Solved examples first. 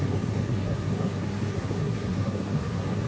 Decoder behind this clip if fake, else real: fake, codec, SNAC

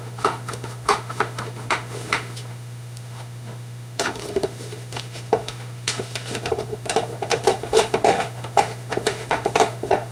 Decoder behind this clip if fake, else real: fake, autoencoder, DAC-VAE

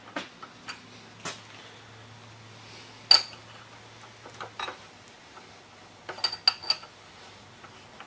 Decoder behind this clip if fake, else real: real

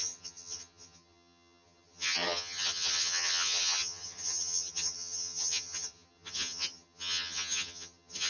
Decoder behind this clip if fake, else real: fake, vocoder, HiFi-GAN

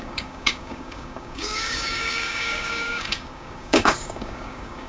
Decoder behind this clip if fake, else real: fake, codec, DAC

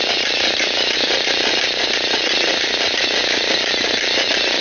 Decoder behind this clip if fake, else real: real